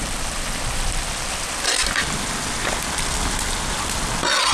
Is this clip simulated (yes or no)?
no